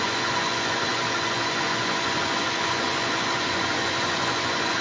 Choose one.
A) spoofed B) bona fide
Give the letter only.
A